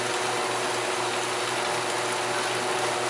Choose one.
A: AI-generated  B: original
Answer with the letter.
B